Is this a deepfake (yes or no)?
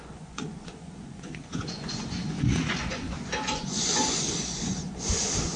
yes